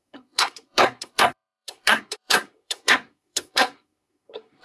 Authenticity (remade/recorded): remade